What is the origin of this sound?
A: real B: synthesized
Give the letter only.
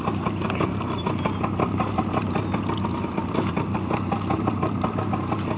A